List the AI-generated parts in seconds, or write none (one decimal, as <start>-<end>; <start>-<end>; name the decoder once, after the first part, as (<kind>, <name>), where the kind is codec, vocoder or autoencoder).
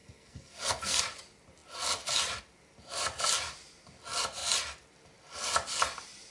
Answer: 0.0-1.0 (codec, SNAC)